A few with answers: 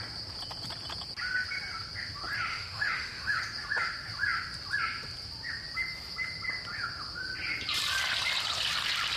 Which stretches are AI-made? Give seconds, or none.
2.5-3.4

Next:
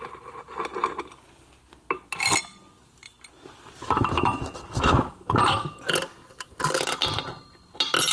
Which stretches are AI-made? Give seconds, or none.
3.8-5.3

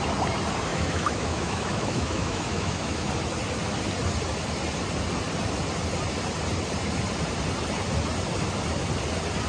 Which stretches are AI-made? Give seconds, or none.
0.7-3.1